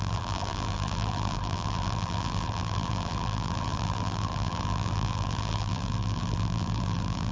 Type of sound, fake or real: fake